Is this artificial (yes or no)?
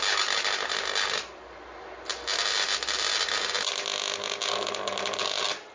no